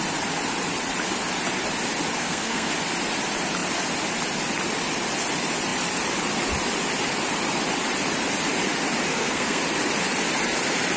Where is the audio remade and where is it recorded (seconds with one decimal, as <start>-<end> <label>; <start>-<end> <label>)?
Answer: 0.0-2.2 recorded; 2.2-2.7 remade; 2.7-9.1 recorded; 9.1-9.6 remade; 9.6-11.0 recorded